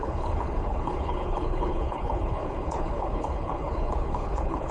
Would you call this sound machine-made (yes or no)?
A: yes